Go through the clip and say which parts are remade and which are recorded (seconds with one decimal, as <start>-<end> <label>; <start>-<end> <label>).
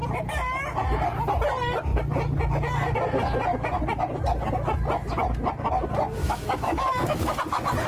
0.0-6.2 recorded; 6.2-7.4 remade; 7.4-7.9 recorded